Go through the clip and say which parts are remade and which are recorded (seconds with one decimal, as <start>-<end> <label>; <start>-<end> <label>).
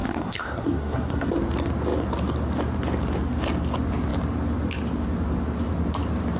0.0-1.3 remade; 1.3-6.4 recorded